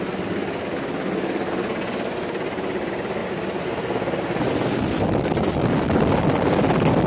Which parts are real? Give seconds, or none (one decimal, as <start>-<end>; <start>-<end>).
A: 0.0-3.2; 4.5-7.1